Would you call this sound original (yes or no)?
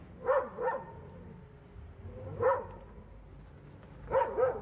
yes